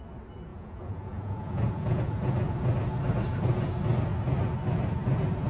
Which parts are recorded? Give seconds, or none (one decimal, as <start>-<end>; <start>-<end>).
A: 0.0-0.5; 2.0-5.5